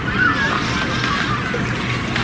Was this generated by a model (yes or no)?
no